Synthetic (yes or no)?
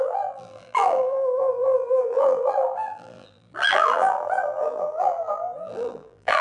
yes